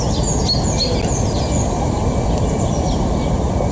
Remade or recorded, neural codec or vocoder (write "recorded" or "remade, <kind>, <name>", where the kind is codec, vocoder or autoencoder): recorded